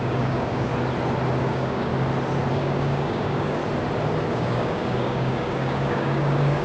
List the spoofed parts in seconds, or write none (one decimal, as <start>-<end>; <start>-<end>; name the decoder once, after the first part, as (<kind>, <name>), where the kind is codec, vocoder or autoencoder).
0.0-0.7 (codec, DAC); 1.4-1.9; 2.5-3.6; 4.3-6.6